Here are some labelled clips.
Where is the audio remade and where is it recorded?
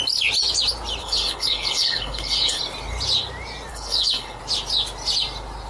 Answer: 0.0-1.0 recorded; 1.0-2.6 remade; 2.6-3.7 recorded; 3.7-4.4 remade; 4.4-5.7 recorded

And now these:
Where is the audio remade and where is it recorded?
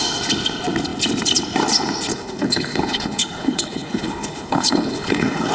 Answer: 0.0-2.1 recorded; 2.1-5.5 remade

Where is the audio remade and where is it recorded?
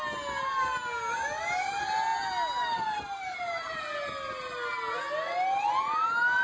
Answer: 0.0-6.4 recorded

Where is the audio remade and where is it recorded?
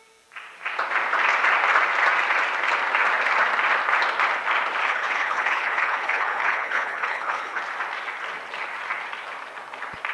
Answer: 0.0-4.8 recorded; 4.8-7.6 remade; 7.6-10.1 recorded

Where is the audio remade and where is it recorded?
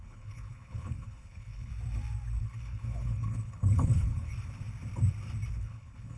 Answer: 0.0-1.7 remade; 1.7-2.4 recorded; 2.4-4.3 remade; 4.3-5.5 recorded; 5.5-6.2 remade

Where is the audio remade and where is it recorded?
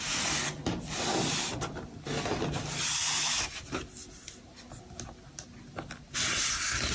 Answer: 0.0-6.9 recorded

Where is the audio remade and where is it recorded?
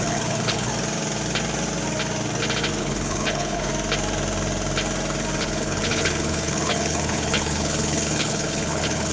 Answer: 0.0-0.7 remade; 0.7-2.8 recorded; 2.8-3.7 remade; 3.7-5.4 recorded; 5.4-9.1 remade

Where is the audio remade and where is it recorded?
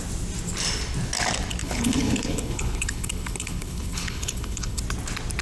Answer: 0.0-1.6 recorded; 1.6-4.8 remade; 4.8-5.4 recorded